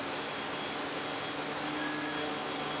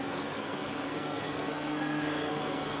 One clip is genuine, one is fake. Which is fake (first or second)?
second